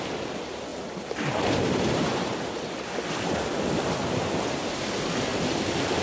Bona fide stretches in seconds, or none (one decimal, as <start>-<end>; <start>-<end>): 0.0-6.0